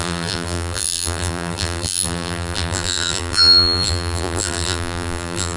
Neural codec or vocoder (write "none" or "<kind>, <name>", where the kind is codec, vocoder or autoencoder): vocoder, BigVGAN v2